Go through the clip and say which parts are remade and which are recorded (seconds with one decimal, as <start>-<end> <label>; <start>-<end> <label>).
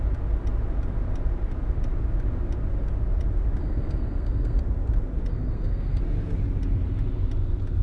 0.0-3.6 recorded; 3.6-4.6 remade; 4.6-5.3 recorded; 5.3-6.0 remade; 6.0-7.8 recorded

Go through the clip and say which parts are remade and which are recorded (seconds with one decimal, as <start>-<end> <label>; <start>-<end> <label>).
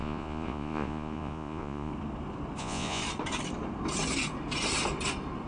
0.0-1.9 remade; 1.9-2.6 recorded; 2.6-3.0 remade; 3.0-5.5 recorded